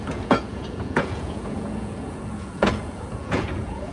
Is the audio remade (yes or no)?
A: yes